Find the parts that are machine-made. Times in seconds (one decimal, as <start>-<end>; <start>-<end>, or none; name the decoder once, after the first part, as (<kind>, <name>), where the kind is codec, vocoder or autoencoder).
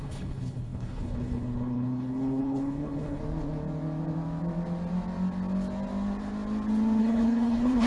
0.0-3.2 (codec, HILCodec); 7.0-7.9